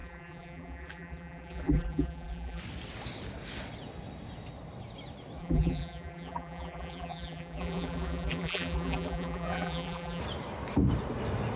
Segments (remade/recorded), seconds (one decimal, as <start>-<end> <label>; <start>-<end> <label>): 0.0-2.6 remade; 2.6-5.4 recorded; 5.4-10.2 remade; 10.2-11.6 recorded